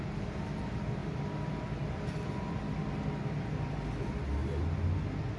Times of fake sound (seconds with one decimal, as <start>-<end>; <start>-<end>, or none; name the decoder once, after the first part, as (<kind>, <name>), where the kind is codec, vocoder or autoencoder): none